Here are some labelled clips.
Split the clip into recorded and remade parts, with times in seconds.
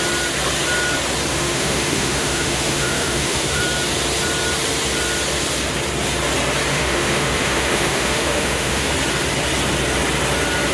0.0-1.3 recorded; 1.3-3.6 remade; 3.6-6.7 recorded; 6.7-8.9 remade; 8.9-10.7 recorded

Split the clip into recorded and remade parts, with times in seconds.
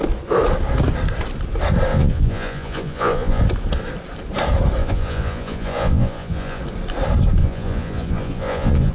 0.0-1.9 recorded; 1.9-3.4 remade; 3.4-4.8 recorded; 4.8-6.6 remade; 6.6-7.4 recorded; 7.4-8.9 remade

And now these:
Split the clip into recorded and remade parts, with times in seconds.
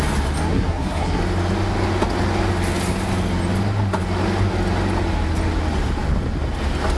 0.0-0.5 recorded; 0.5-1.2 remade; 1.2-7.0 recorded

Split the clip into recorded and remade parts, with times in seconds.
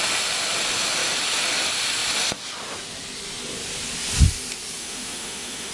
0.0-4.8 recorded; 4.8-5.7 remade